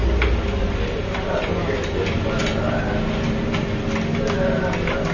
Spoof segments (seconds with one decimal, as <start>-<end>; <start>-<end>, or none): 0.0-2.4